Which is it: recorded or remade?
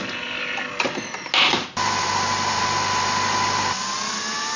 recorded